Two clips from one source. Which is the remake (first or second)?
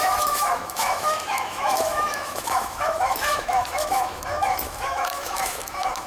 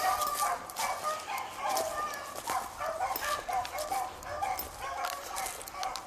first